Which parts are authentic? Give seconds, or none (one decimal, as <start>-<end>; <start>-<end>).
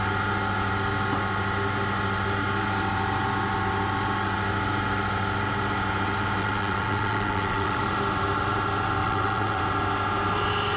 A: 0.0-6.4; 7.8-9.0; 9.6-10.8